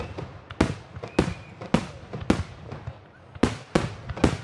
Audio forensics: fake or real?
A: real